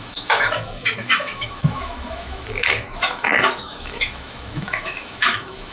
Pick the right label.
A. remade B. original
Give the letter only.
A